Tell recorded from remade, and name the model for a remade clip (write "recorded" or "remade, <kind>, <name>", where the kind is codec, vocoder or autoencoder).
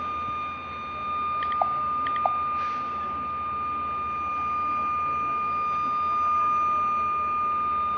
recorded